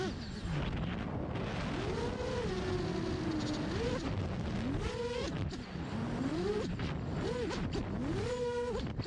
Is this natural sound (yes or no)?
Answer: yes